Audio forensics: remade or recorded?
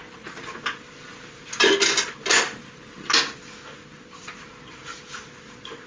recorded